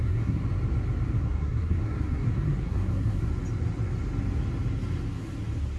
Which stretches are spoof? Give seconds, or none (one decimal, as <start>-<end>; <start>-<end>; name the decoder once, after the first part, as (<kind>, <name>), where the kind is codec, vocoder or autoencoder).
0.0-0.4 (codec, SNAC); 1.2-3.3